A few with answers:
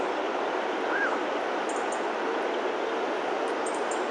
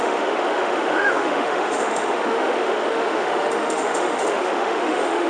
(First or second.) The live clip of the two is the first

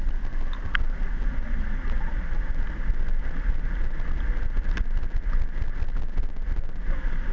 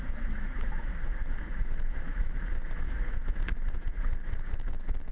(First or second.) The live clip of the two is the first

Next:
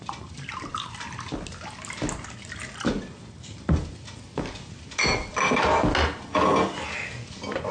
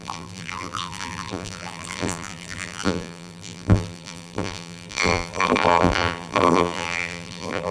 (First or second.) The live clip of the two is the first